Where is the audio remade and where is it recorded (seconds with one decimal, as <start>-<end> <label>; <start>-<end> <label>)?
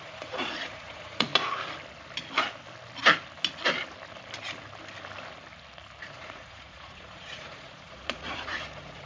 0.0-1.3 remade; 1.3-6.0 recorded; 6.0-9.1 remade